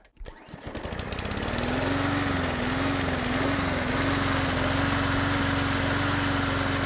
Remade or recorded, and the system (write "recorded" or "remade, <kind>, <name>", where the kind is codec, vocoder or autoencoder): recorded